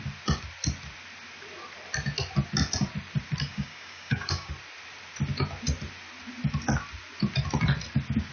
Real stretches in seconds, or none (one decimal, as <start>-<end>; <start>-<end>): 0.0-3.5; 4.5-8.3